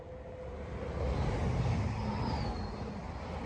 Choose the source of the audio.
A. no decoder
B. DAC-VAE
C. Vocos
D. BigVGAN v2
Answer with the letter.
A